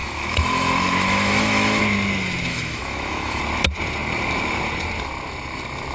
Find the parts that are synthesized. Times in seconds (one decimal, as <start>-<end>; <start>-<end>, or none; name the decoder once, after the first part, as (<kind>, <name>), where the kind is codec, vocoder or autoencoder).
0.0-1.8 (autoencoder, DAC-VAE); 2.5-3.4